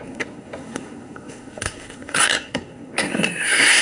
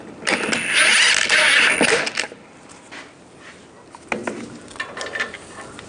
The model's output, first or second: first